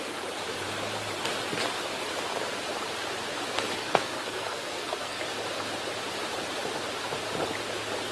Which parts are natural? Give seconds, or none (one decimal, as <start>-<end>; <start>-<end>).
0.0-3.8; 5.2-8.1